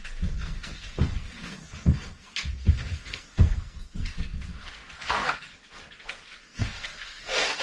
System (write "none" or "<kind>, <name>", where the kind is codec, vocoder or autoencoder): codec, SNAC